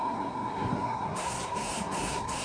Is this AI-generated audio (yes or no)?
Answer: yes